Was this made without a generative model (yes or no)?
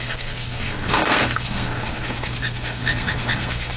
no